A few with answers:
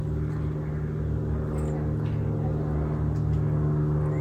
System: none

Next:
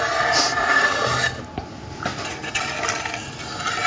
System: none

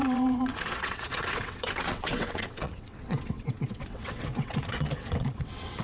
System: vocoder, WaveNeXt